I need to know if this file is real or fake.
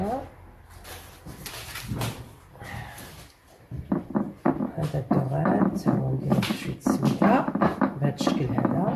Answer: real